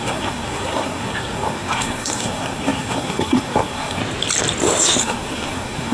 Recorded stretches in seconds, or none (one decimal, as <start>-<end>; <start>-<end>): 4.0-5.0